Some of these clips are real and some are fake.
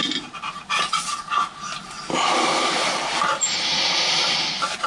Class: real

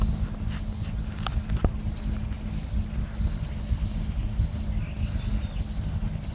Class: real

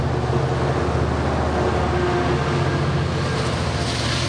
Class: real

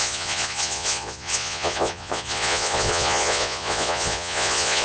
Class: fake